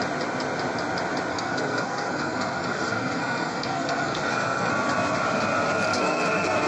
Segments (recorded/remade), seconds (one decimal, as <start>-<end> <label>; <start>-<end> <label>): 0.0-1.3 recorded; 1.3-4.7 remade; 4.7-5.9 recorded; 5.9-6.7 remade